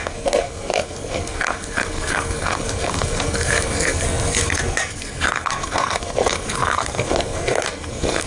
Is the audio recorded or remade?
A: remade